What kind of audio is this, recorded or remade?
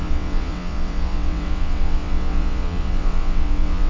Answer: remade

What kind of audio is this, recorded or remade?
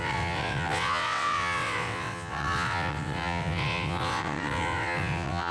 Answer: remade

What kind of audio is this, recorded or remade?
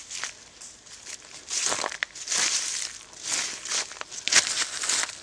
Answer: recorded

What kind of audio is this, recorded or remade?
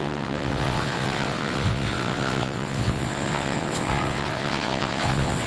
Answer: remade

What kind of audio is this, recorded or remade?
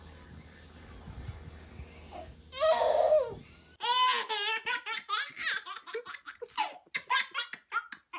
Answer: recorded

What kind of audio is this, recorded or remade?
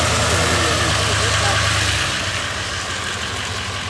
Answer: recorded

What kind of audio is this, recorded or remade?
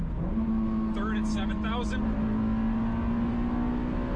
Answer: recorded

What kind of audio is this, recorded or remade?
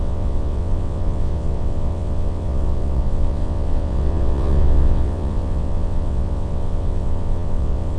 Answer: remade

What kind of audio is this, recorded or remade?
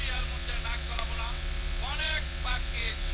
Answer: remade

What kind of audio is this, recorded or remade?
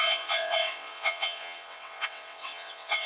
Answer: remade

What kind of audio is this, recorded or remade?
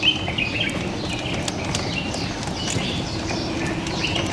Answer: recorded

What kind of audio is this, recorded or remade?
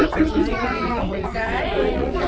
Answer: remade